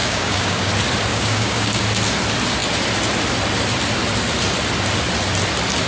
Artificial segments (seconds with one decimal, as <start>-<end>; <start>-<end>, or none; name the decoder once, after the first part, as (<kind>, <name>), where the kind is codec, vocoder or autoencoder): 0.0-0.7 (codec, DAC); 1.1-1.8